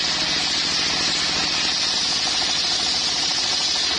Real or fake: real